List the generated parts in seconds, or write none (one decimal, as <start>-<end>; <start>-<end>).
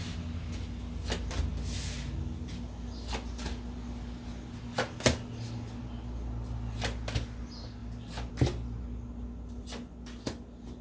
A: none